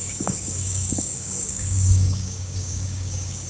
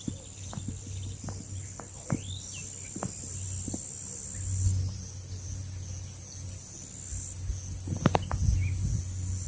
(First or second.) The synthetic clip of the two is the first